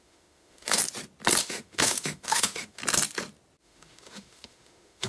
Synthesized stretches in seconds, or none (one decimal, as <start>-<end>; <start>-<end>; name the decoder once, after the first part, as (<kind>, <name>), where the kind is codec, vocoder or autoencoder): 0.0-0.8 (autoencoder, DAC-VAE); 1.4-2.8; 3.6-5.1